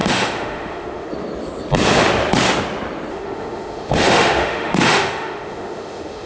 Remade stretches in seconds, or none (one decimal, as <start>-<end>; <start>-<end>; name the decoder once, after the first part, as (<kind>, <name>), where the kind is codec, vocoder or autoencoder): 0.0-1.1 (autoencoder, DAC-VAE); 3.1-6.3